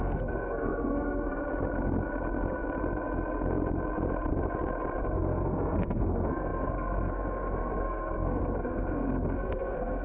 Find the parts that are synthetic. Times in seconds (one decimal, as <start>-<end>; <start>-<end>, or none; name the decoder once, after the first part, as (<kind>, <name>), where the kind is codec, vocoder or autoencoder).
0.0-1.4 (codec, SNAC); 5.0-10.0